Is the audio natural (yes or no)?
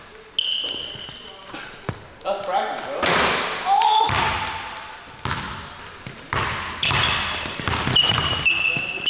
yes